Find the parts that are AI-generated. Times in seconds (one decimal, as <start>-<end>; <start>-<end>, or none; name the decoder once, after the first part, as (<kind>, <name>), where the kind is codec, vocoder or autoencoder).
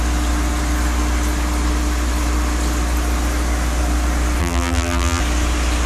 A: 4.4-5.2 (vocoder, BigVGAN v2)